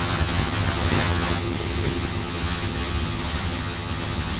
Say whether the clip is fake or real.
fake